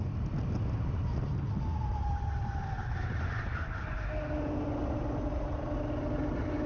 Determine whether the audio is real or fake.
real